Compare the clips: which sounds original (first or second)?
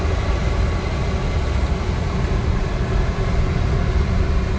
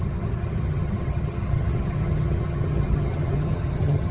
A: first